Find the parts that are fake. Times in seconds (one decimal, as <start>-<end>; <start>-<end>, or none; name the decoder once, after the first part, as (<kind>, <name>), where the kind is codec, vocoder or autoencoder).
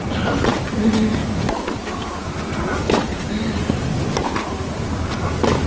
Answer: none